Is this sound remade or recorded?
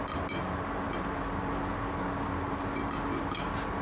recorded